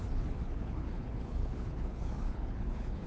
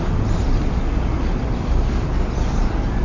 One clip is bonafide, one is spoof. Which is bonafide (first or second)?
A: second